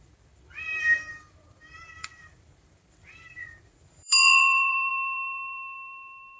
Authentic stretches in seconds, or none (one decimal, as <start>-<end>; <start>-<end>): none